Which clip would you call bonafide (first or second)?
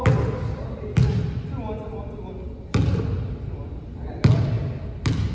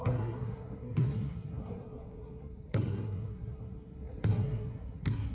first